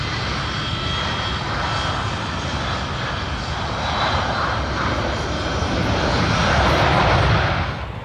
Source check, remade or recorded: recorded